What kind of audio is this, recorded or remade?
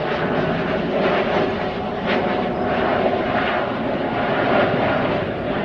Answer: recorded